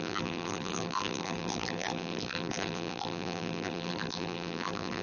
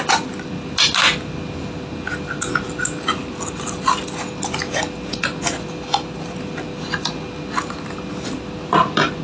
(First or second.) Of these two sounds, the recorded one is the second